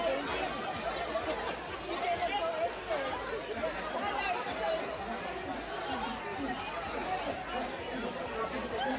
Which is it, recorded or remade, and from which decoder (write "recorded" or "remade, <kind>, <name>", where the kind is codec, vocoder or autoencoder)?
recorded